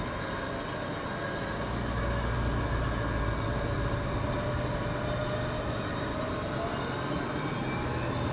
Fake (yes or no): no